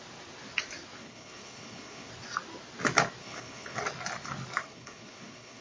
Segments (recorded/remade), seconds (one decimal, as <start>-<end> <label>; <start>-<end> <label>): 0.0-1.0 recorded; 1.0-2.1 remade; 2.1-3.2 recorded; 3.2-3.8 remade; 3.8-4.6 recorded; 4.6-5.6 remade

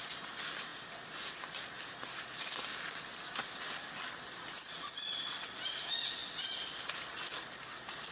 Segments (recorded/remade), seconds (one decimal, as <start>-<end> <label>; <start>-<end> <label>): 0.0-8.1 recorded

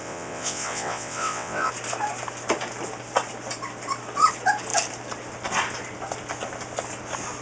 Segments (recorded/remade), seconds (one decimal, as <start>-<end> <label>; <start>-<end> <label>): 0.0-1.7 remade; 1.7-7.4 recorded

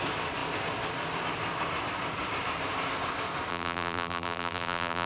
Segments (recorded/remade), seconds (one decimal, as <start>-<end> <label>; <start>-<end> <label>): 0.0-3.5 recorded; 3.5-5.1 remade